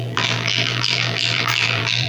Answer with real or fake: fake